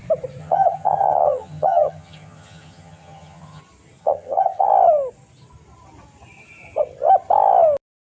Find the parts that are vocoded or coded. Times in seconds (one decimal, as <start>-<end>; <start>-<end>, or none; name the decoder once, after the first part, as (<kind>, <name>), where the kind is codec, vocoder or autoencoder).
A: 0.4-3.6 (vocoder, HiFi-GAN); 4.0-4.7